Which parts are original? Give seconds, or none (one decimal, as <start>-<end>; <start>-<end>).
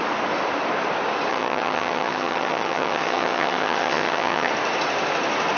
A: 0.0-1.3; 4.5-5.6